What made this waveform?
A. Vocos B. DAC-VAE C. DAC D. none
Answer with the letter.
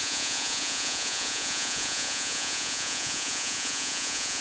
A